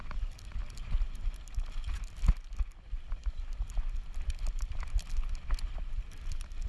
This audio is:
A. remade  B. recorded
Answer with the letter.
B